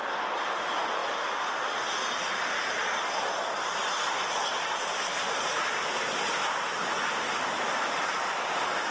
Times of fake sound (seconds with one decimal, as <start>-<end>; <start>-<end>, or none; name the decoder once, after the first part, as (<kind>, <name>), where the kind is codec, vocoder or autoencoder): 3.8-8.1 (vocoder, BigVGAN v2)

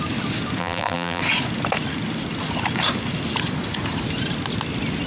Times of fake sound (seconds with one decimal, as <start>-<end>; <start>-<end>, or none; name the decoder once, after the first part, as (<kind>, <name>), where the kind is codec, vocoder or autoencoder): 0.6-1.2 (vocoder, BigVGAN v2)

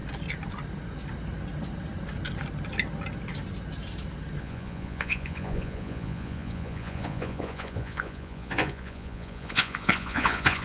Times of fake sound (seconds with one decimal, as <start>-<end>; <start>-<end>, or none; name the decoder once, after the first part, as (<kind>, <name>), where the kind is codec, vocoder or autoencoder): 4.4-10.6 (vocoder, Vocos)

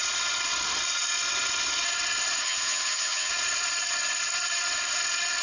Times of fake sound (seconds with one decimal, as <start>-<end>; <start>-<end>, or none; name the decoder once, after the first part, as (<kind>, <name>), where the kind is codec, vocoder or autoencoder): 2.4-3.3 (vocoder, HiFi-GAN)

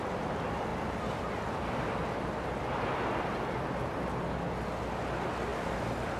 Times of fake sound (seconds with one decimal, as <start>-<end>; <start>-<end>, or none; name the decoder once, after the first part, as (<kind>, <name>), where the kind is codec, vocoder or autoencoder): none

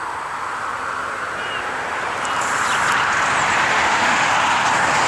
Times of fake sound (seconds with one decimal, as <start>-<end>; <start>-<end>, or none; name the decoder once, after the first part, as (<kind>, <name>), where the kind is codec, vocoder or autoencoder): 3.7-4.3 (autoencoder, DAC-VAE)

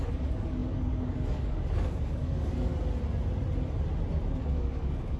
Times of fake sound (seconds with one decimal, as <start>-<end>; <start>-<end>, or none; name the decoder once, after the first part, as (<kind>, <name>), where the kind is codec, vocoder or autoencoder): 0.0-2.7 (codec, DAC); 4.4-5.2